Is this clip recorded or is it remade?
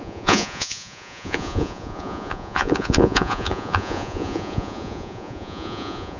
remade